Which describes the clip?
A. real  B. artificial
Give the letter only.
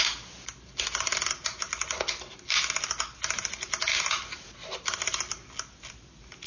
A